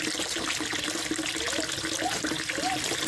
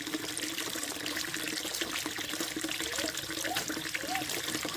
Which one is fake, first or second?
second